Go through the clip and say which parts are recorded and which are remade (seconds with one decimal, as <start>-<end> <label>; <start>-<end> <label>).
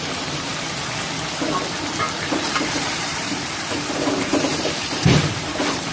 0.0-0.5 remade; 0.5-2.1 recorded; 2.1-5.9 remade